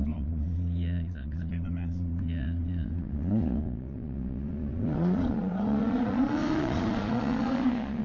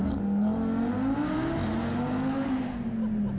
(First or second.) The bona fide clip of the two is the second